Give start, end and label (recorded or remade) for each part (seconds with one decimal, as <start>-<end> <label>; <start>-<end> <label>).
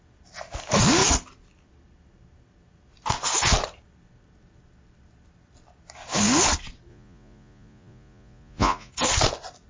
0.0-6.9 recorded; 6.9-8.9 remade; 8.9-9.7 recorded